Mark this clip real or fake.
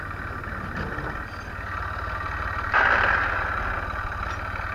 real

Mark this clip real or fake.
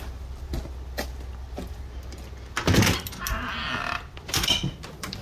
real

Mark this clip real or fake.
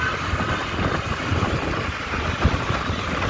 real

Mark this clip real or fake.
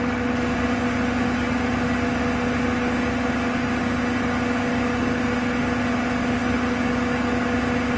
real